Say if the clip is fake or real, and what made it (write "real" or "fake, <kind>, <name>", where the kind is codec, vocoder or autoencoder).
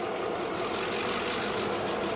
real